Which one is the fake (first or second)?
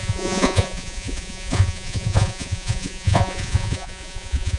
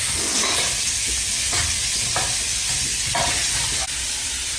first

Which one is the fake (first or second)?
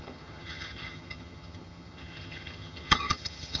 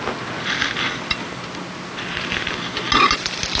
first